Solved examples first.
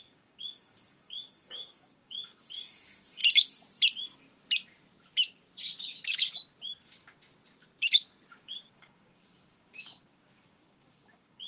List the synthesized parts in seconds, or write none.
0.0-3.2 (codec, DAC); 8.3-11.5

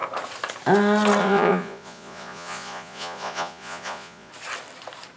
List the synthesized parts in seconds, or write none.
1.2-4.3 (vocoder, Vocos)

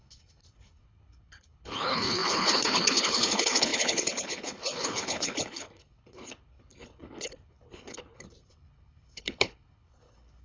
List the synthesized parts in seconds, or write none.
0.0-10.4 (codec, HILCodec)

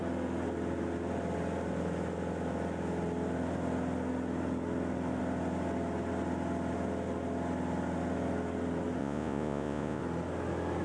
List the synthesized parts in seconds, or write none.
9.0-10.0 (vocoder, Vocos)